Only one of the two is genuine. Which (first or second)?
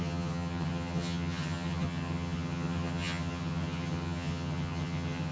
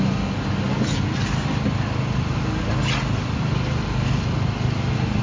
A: second